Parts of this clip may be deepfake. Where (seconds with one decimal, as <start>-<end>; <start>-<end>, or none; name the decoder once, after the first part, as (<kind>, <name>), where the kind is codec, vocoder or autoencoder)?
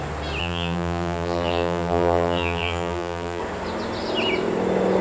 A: 0.4-3.4 (vocoder, BigVGAN v2)